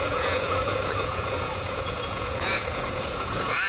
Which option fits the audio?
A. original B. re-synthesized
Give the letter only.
B